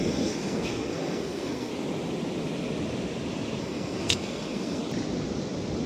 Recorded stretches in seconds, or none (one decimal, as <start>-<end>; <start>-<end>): 1.7-3.6; 4.8-5.9